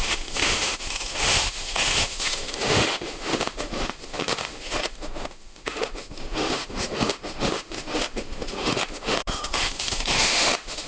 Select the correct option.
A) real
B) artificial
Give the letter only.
B